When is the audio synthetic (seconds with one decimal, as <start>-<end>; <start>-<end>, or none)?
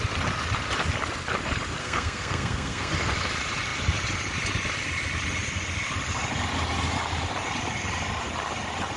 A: 1.8-2.9